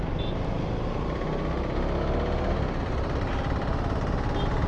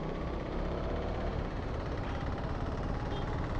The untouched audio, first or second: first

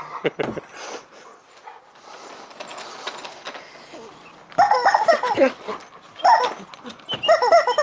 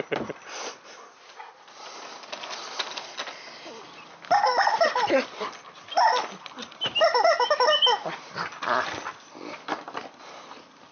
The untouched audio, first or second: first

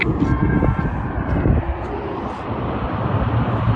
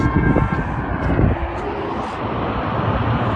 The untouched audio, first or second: second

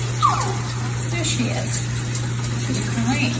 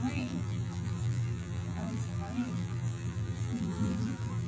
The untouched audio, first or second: first